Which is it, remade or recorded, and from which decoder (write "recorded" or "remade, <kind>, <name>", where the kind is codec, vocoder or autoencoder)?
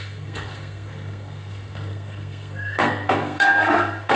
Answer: remade, codec, SNAC